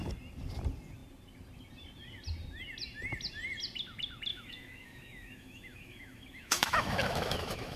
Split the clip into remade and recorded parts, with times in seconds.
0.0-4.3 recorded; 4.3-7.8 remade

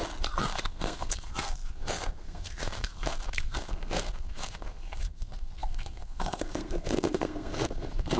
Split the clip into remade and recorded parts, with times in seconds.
0.0-0.5 recorded; 0.5-8.2 remade

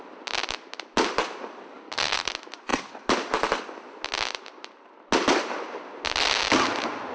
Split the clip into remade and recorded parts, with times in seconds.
0.0-1.8 recorded; 1.8-2.3 remade; 2.3-7.1 recorded